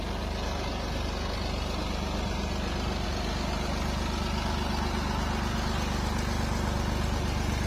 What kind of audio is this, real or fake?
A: real